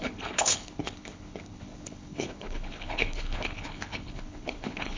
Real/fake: fake